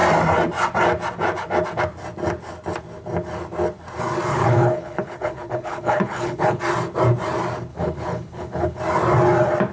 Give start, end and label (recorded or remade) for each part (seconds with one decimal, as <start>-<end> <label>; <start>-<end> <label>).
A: 0.0-4.3 recorded; 4.3-6.6 remade; 6.6-7.7 recorded; 7.7-8.8 remade; 8.8-9.7 recorded